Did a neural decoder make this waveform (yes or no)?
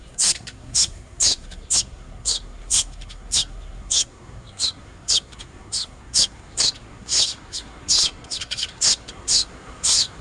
yes